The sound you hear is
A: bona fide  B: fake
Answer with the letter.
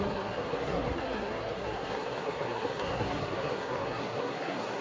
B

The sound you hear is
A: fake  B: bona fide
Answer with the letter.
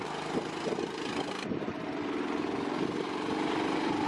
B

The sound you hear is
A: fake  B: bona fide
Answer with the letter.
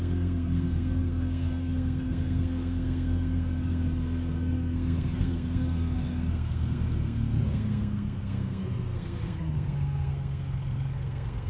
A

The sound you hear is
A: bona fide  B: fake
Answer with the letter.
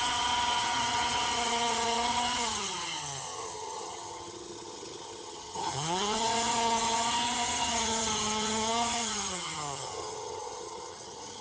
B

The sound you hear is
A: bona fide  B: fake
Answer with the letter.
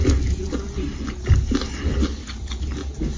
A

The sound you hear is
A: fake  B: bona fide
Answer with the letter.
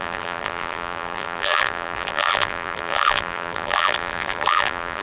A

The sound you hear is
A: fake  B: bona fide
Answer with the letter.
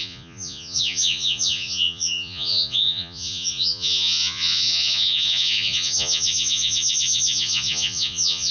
A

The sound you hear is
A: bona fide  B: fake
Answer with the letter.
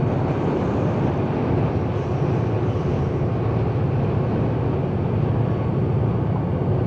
A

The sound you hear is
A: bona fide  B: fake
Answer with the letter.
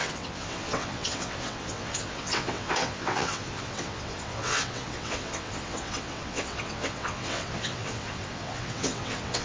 B